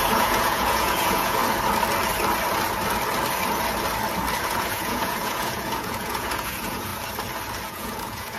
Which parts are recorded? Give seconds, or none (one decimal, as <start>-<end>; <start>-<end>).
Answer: 1.4-4.4; 6.9-7.7